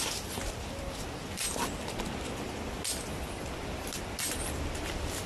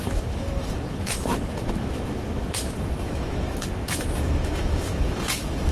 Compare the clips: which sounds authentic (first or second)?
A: first